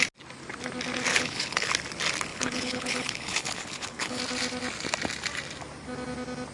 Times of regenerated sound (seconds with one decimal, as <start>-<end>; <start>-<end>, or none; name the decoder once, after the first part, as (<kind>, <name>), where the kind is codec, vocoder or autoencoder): 1.1-1.7 (codec, HILCodec); 2.3-4.2